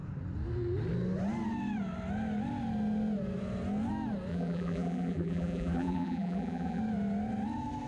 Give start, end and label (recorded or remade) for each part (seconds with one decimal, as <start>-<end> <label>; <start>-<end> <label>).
0.0-4.3 recorded; 4.3-6.8 remade; 6.8-7.9 recorded